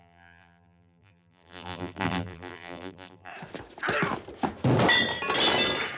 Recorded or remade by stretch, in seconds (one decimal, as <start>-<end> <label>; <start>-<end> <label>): 0.0-3.3 remade; 3.3-6.0 recorded